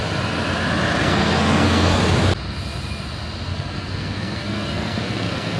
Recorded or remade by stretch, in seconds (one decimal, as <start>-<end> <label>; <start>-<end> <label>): 0.0-1.0 recorded; 1.0-2.0 remade; 2.0-3.5 recorded; 3.5-5.6 remade